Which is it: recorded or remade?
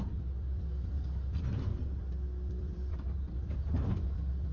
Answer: remade